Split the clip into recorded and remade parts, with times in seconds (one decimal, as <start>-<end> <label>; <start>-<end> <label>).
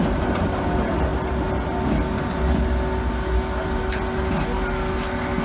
0.0-5.4 recorded